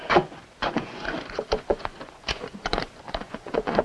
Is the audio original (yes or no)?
no